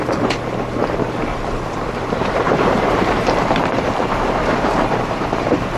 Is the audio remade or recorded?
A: remade